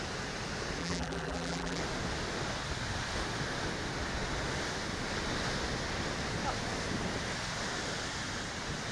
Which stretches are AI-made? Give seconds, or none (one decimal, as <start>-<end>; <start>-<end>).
0.8-1.8